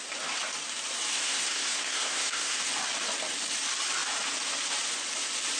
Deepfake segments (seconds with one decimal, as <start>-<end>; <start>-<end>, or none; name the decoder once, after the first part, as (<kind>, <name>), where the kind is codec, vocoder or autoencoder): 1.1-2.6 (codec, SNAC)